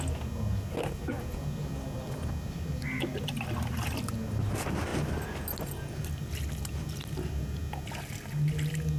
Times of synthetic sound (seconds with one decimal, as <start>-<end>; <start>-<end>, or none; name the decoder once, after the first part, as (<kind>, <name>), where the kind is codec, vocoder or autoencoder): none